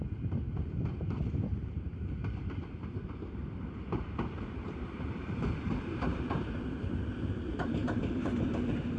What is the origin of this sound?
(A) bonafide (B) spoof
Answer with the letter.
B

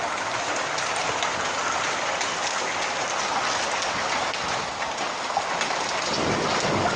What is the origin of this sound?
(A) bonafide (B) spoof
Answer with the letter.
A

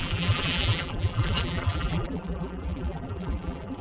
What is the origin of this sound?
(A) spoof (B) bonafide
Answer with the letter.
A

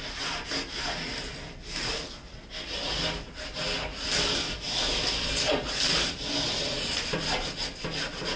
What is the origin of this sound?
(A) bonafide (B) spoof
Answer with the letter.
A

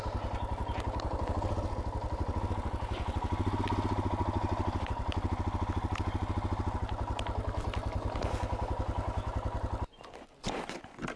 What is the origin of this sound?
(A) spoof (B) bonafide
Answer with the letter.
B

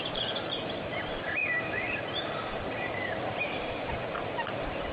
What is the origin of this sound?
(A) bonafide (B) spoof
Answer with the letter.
B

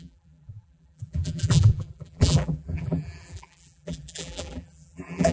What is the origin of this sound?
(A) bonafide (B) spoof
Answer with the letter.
B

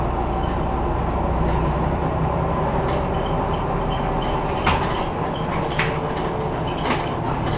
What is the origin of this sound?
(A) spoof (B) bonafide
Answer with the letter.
B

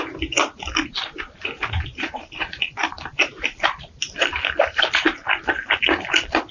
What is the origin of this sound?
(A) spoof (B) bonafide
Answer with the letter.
B